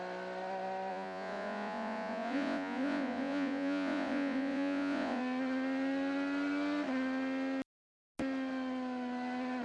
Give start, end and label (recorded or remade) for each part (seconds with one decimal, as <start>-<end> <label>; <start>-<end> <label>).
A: 0.0-0.9 recorded; 0.9-5.2 remade; 5.2-9.6 recorded